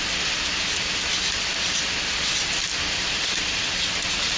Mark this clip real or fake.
real